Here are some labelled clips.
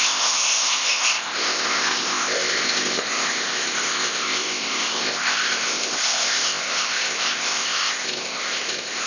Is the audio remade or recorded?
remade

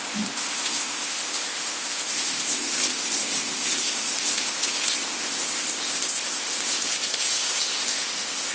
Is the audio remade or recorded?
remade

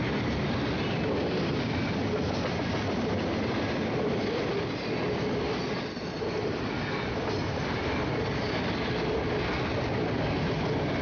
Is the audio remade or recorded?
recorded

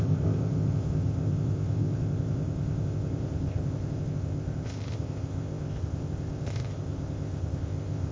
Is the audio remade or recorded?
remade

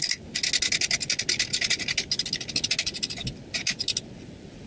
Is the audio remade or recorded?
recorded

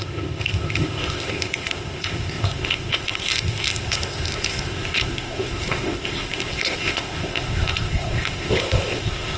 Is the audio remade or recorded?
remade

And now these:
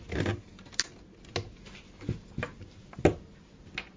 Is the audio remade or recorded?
recorded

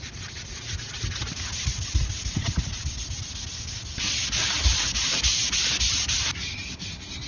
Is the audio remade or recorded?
recorded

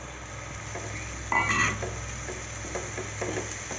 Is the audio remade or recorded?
recorded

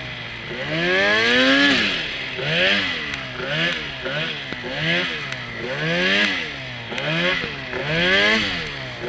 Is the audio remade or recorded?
recorded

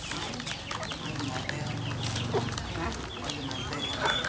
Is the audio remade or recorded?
recorded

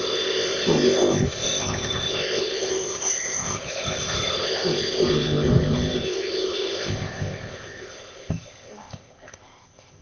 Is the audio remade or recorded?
remade